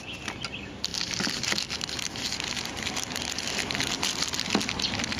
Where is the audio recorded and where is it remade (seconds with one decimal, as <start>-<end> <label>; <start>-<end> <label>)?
0.0-5.2 recorded